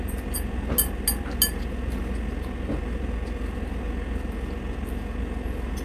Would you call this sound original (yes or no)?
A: yes